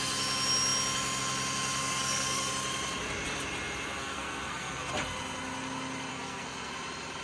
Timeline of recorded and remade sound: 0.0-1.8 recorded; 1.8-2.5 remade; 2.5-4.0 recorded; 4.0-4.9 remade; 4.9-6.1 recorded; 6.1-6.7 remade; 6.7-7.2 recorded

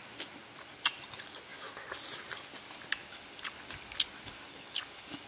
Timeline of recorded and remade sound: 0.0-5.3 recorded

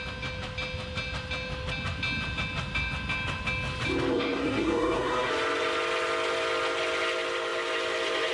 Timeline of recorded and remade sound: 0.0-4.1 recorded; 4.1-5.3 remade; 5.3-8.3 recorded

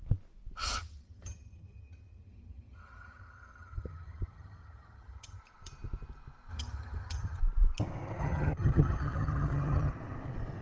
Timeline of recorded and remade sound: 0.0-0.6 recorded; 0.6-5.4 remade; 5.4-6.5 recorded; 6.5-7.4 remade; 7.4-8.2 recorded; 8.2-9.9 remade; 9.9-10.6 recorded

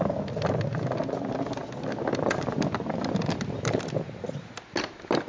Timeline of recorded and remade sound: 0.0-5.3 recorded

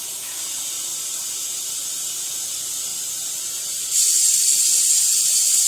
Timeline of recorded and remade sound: 0.0-0.9 recorded; 0.9-2.1 remade; 2.1-2.9 recorded; 2.9-3.4 remade; 3.4-5.7 recorded

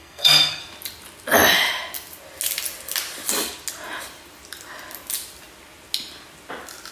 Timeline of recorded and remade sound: 0.0-0.6 remade; 0.6-6.9 recorded